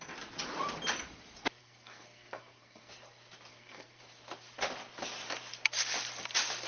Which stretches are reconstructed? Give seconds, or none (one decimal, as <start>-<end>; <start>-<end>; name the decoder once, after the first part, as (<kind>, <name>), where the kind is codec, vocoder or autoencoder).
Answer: 1.6-2.9 (codec, SNAC); 3.5-4.0